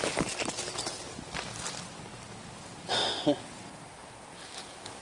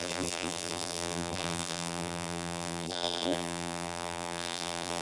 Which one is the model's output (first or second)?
second